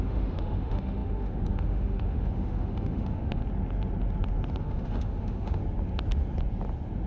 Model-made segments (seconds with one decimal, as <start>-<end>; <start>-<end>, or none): 0.0-3.4; 4.6-5.6